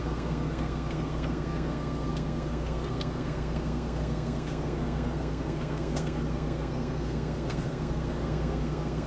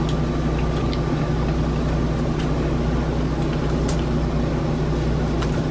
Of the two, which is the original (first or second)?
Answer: second